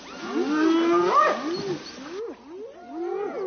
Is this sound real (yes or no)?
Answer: yes